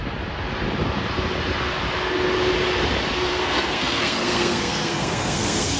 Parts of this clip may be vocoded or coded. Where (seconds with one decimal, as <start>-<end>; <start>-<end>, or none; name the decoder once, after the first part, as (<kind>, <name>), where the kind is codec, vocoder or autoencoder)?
3.3-5.8 (codec, SNAC)